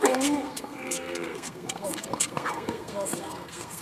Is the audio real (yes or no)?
no